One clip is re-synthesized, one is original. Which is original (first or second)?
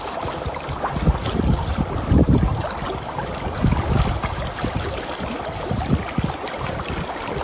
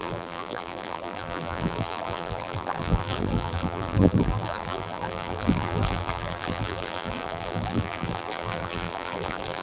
first